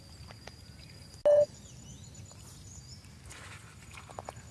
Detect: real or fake real